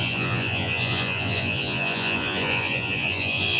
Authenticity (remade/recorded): remade